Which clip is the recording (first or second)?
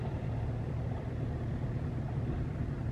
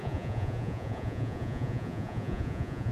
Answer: first